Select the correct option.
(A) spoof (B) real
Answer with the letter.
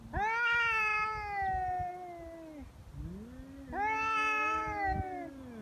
B